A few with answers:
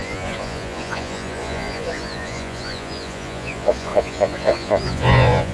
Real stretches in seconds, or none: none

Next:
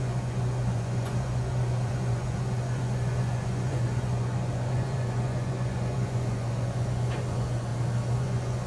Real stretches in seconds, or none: 7.7-8.2